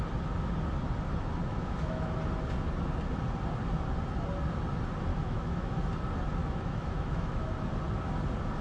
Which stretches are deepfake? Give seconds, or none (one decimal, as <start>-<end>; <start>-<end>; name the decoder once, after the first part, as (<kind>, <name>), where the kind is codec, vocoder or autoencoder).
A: 1.5-2.2 (autoencoder, DAC-VAE); 5.1-5.8; 6.4-7.5